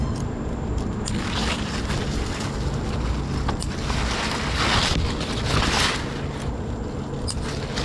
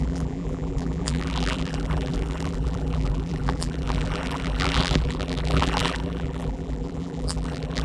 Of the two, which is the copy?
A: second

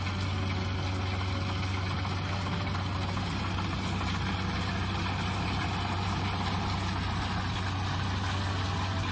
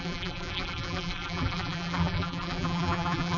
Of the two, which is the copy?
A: second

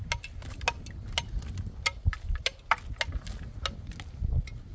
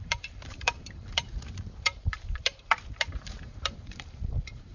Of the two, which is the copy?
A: second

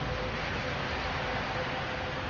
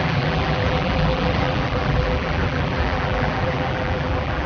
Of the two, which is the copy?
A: second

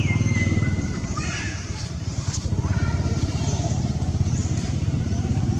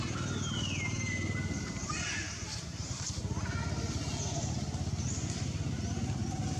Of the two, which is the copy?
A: first